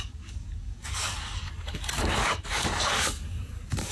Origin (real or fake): fake